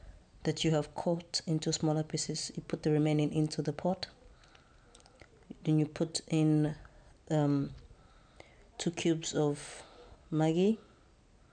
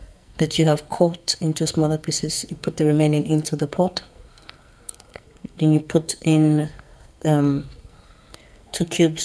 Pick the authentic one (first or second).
first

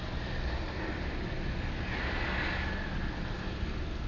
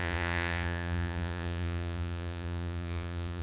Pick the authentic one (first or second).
first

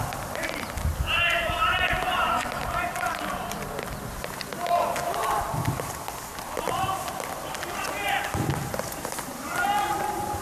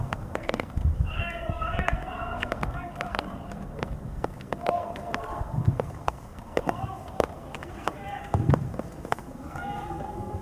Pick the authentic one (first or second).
first